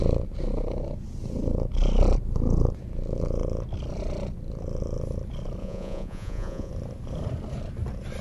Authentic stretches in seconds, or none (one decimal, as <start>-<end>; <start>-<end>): 0.0-5.6; 6.7-8.2